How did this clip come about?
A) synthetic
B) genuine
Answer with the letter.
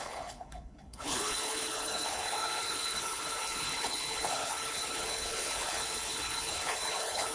A